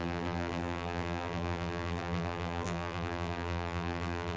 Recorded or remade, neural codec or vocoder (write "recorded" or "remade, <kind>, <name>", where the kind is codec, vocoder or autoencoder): remade, vocoder, BigVGAN v2